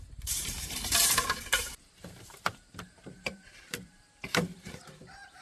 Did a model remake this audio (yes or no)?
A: yes